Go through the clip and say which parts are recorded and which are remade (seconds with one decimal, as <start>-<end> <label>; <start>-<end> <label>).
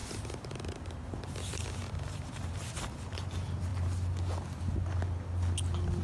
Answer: 0.0-3.3 remade; 3.3-6.0 recorded